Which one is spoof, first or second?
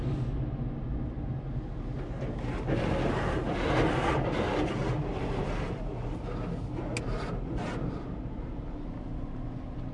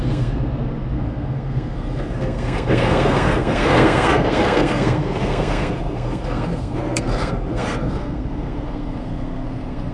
second